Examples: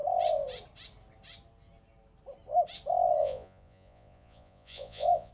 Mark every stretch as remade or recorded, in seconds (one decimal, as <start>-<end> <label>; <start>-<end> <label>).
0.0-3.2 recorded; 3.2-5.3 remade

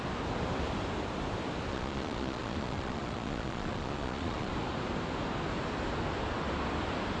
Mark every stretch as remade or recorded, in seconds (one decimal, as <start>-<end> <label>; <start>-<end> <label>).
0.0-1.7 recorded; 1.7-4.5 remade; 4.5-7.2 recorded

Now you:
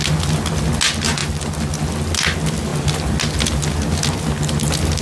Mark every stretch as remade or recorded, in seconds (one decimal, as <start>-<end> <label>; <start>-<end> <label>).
0.0-5.0 recorded

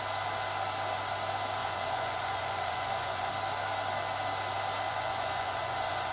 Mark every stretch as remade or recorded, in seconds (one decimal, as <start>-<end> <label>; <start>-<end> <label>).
0.0-1.6 recorded; 1.6-3.3 remade; 3.3-4.9 recorded; 4.9-6.1 remade

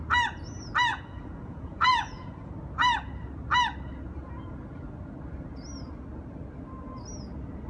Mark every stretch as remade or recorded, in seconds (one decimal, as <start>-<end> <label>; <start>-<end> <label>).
0.0-0.9 recorded; 0.9-2.5 remade; 2.5-7.7 recorded

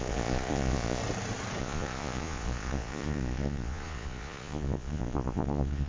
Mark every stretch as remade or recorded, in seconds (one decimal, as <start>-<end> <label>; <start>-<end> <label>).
0.0-1.0 remade; 1.0-1.6 recorded; 1.6-5.9 remade